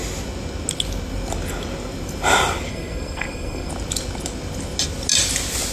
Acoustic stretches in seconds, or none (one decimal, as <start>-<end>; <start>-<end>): 0.0-2.7; 3.7-5.7